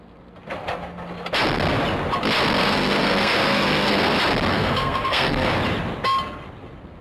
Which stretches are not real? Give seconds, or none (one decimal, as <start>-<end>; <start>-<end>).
2.6-4.1; 4.5-5.5